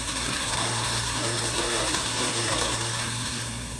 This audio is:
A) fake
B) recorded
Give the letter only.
A